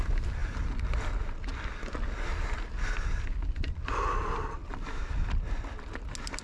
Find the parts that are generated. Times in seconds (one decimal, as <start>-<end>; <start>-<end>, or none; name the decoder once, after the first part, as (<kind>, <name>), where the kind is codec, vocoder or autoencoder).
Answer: none